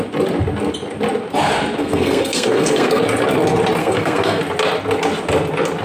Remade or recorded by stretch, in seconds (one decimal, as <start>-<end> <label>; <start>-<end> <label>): 0.0-1.8 recorded; 1.8-3.0 remade; 3.0-3.8 recorded; 3.8-4.4 remade; 4.4-5.8 recorded